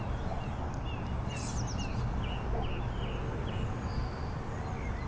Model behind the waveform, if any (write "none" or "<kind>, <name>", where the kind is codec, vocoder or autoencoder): none